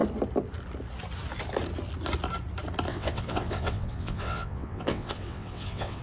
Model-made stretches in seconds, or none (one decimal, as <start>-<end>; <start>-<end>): 2.9-6.0